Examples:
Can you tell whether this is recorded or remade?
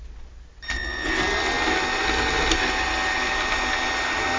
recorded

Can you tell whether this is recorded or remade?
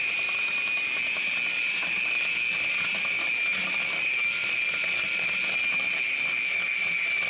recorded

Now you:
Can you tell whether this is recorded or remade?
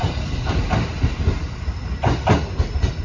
recorded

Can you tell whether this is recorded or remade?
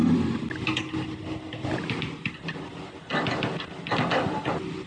recorded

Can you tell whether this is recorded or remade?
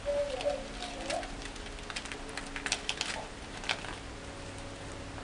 recorded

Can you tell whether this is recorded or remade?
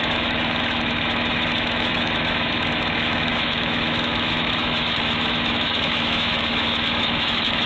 remade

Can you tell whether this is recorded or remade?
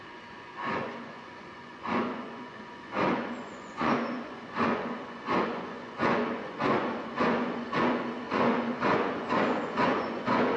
remade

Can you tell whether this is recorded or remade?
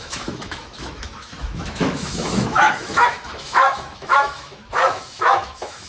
remade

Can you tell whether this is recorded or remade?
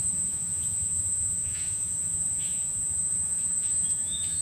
remade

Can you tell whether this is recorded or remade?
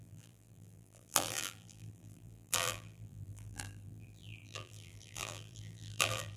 remade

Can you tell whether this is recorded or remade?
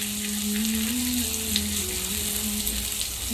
recorded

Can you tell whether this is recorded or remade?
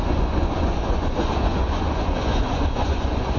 remade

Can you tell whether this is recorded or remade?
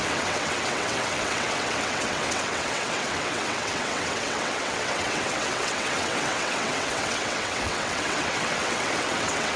remade